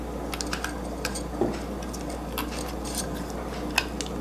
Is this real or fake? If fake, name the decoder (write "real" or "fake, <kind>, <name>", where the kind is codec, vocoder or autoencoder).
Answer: real